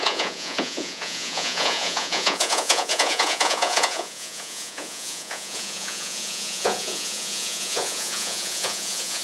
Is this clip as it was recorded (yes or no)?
no